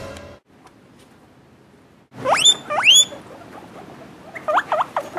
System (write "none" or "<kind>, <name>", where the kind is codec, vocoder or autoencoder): none